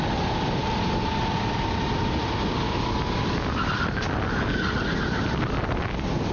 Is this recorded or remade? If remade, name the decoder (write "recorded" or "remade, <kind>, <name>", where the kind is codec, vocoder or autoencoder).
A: recorded